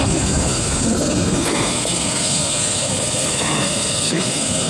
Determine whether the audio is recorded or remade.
remade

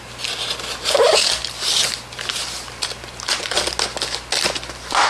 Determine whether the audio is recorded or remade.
recorded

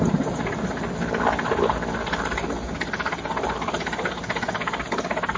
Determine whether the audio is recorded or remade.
recorded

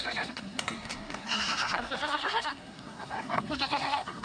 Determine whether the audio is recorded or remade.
remade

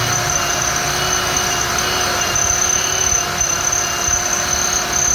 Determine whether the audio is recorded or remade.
recorded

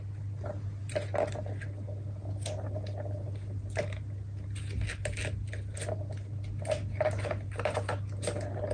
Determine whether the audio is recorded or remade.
recorded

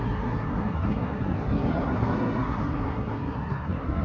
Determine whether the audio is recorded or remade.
remade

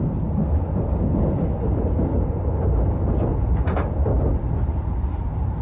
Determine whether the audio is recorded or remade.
recorded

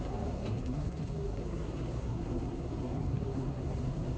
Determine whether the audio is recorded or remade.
remade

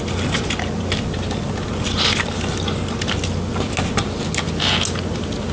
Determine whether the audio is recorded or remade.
recorded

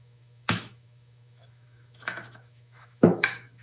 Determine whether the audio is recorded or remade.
remade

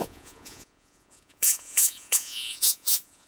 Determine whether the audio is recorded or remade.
remade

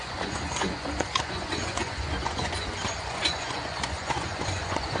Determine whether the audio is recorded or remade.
remade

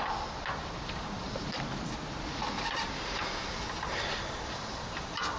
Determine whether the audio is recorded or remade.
recorded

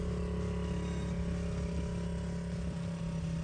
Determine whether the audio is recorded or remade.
recorded